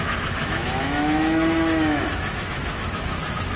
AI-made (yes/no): yes